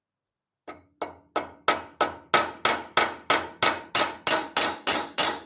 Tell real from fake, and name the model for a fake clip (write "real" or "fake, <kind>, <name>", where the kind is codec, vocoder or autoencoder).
real